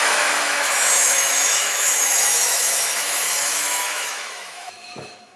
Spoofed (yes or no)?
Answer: yes